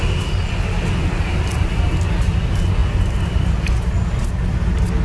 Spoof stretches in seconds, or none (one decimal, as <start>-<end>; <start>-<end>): 1.0-1.7; 2.8-3.8